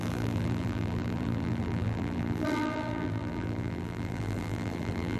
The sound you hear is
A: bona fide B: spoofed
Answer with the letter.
B